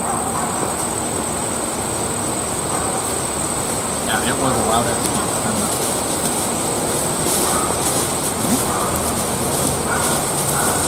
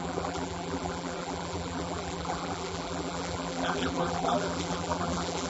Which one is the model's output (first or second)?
second